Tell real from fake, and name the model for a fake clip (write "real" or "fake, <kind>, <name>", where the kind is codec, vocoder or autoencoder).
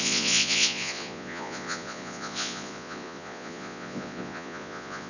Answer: fake, vocoder, Vocos